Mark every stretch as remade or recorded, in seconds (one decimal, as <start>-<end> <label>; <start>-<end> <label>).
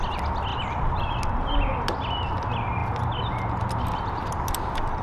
0.0-5.0 recorded